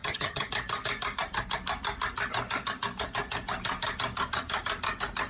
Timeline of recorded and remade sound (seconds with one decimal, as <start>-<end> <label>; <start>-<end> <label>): 0.0-0.5 remade; 0.5-5.3 recorded